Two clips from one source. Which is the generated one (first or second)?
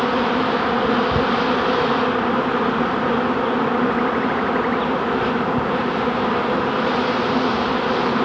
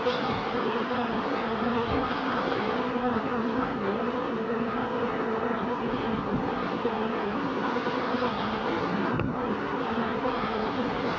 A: second